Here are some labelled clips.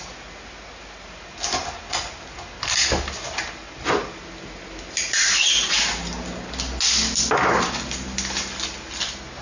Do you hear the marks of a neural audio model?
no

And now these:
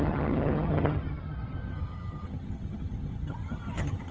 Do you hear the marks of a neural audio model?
yes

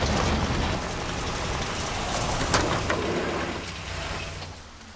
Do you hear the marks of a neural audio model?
no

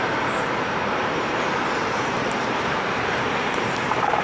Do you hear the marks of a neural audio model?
yes